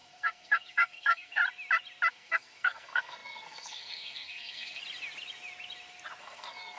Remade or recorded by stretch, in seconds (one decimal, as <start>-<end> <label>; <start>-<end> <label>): 0.0-1.4 remade; 1.4-2.1 recorded; 2.1-4.8 remade; 4.8-6.2 recorded; 6.2-6.8 remade